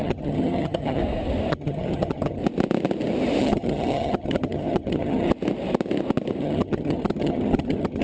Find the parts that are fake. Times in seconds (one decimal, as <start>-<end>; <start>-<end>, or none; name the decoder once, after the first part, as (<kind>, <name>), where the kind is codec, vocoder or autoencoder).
0.0-1.0 (vocoder, HiFi-GAN); 1.5-2.4; 3.4-5.3; 6.4-8.0